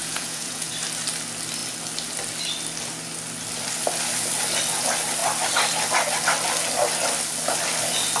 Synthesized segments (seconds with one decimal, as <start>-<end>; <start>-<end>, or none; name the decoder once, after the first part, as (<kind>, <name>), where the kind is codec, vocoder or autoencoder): 0.0-0.7 (vocoder, Vocos)